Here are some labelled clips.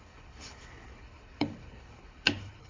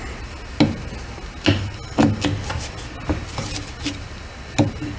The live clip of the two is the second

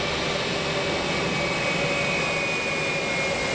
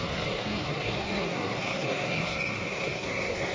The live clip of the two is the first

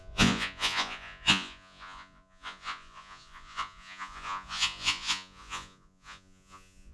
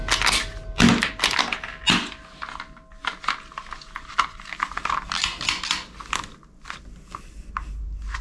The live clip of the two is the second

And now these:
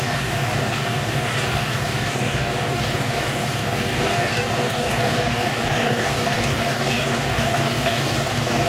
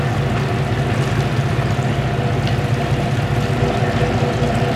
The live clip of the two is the second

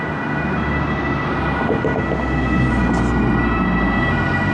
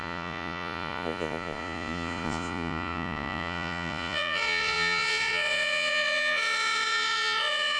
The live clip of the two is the first